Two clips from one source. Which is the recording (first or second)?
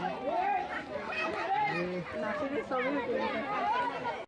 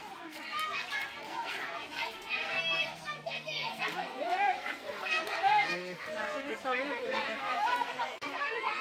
first